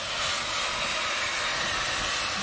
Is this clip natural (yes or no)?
yes